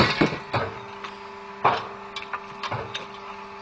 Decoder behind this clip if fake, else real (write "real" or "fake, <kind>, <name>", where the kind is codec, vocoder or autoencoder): real